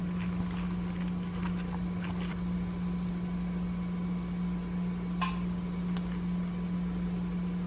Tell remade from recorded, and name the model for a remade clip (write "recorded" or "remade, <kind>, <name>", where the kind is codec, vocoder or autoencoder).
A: recorded